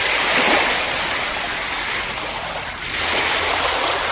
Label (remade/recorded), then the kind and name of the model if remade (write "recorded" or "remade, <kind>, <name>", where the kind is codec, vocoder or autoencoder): recorded